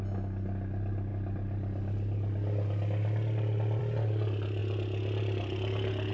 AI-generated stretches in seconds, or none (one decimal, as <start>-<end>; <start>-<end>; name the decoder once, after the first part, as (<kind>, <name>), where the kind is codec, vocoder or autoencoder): none